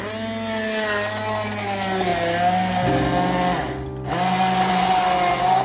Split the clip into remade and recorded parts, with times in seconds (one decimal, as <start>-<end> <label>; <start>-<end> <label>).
0.0-5.6 recorded